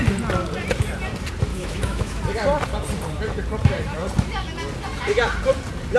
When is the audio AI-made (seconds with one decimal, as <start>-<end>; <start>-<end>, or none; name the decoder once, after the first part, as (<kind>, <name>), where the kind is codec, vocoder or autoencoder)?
1.5-2.2 (autoencoder, DAC-VAE)

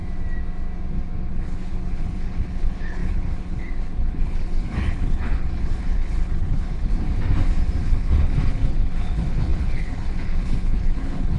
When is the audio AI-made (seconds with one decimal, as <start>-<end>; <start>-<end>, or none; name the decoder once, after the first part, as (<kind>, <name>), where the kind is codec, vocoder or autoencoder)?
1.3-6.9 (codec, HILCodec); 7.8-11.4

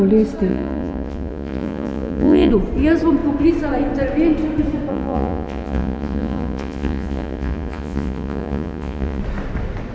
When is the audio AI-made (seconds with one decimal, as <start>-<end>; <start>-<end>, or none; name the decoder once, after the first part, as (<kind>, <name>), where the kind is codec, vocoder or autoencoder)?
0.5-2.5 (vocoder, Vocos); 4.9-9.2